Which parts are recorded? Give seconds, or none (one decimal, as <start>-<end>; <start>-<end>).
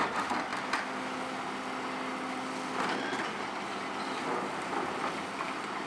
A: 0.0-5.9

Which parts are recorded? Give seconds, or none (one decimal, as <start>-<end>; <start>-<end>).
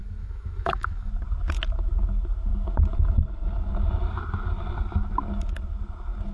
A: 1.1-6.3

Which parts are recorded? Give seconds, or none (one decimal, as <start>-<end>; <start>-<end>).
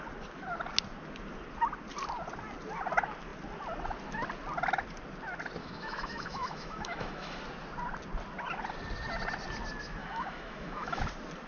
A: 0.0-5.6; 7.4-10.0; 11.0-11.5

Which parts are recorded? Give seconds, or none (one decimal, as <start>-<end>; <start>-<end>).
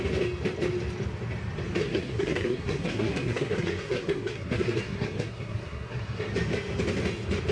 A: 0.0-1.8; 6.3-7.5